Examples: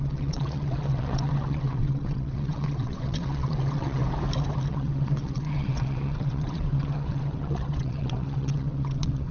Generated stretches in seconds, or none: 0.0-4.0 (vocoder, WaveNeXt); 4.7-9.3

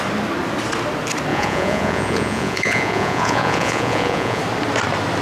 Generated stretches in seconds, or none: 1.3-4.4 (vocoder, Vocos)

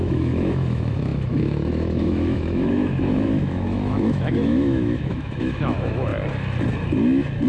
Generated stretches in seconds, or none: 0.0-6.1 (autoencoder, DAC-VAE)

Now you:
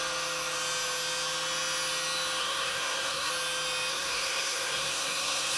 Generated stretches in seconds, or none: 2.4-3.3 (codec, SNAC); 3.9-5.6

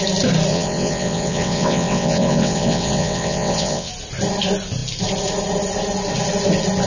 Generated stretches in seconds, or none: 0.5-3.9 (vocoder, WaveNeXt)